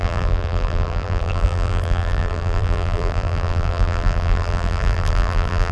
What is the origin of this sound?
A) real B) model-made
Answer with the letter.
B